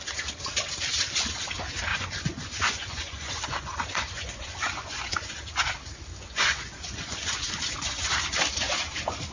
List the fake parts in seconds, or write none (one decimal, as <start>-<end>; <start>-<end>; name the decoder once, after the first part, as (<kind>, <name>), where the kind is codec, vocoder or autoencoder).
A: 1.9-5.4 (vocoder, Vocos); 6.1-8.1